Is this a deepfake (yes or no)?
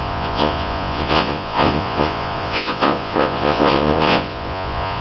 yes